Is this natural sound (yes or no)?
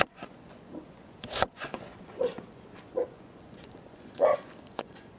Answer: no